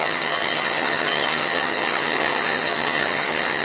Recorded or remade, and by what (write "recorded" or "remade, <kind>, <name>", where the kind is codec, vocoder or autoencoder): remade, vocoder, HiFi-GAN